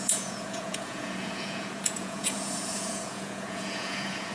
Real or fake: fake